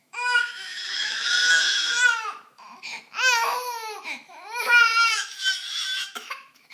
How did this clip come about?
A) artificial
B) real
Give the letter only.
A